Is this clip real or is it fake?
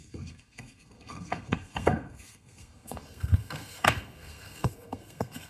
fake